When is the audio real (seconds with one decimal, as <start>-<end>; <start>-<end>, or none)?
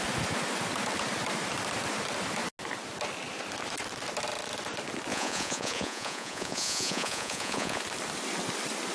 0.0-5.1; 7.8-8.9